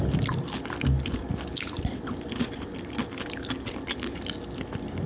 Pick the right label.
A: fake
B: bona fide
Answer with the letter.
B